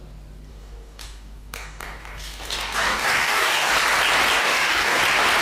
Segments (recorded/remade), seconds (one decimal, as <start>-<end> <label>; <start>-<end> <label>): 0.0-0.5 recorded; 0.5-3.7 remade; 3.7-4.4 recorded; 4.4-5.0 remade; 5.0-5.4 recorded